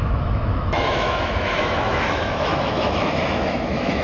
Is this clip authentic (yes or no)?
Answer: no